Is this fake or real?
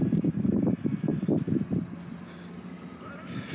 real